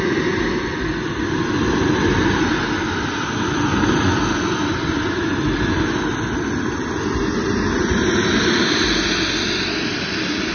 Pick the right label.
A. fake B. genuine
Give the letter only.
B